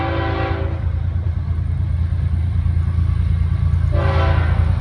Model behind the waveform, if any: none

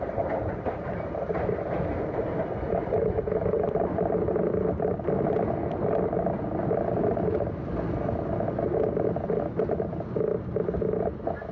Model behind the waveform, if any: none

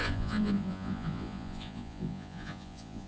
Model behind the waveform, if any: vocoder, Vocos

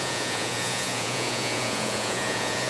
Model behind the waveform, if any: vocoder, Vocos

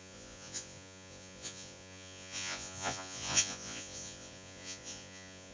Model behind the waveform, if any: vocoder, Vocos